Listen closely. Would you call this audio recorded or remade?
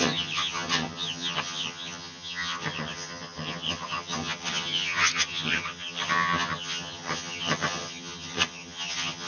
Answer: remade